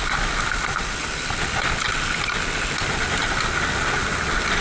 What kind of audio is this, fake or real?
real